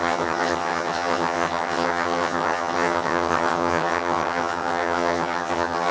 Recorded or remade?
remade